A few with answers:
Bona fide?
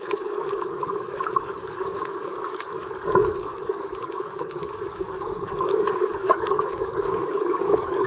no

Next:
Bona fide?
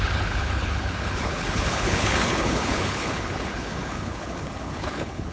no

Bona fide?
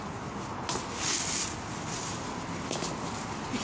yes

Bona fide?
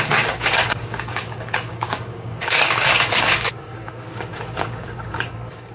no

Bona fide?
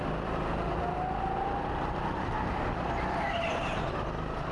yes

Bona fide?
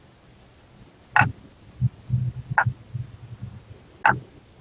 yes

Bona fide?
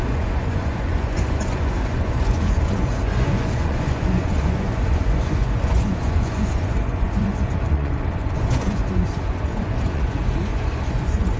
no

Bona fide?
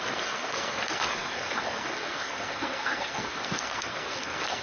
no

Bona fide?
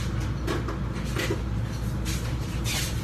yes